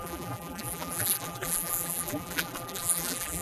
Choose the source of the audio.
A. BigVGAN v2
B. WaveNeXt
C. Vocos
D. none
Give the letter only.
A